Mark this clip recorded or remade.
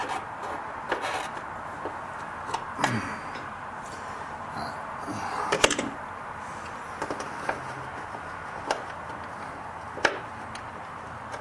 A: recorded